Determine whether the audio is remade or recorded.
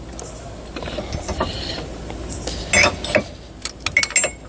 recorded